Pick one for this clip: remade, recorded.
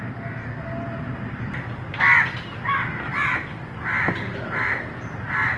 recorded